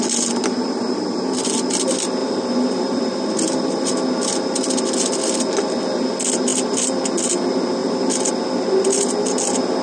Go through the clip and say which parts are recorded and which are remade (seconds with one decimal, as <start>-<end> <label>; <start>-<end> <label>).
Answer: 0.0-2.2 recorded; 2.2-3.9 remade; 3.9-7.8 recorded; 7.8-8.3 remade; 8.3-9.8 recorded